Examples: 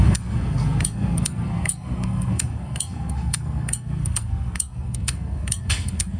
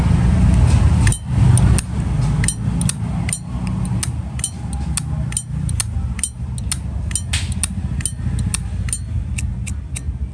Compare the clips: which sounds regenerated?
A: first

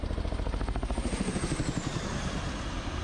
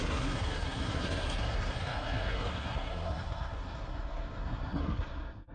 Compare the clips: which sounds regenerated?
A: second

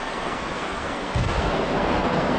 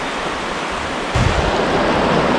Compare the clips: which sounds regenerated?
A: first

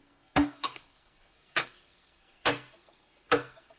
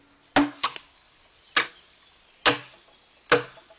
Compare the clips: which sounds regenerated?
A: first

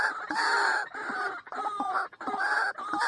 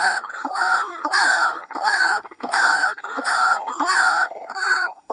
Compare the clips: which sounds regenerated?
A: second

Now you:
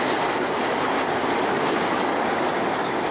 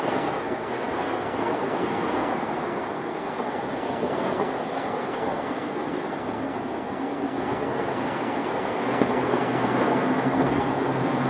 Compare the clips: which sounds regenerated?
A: second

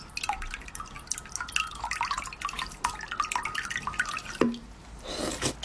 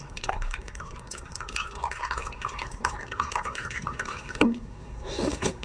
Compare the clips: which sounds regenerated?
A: second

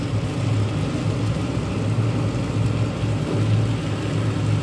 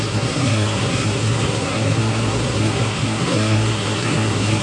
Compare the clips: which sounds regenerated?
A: second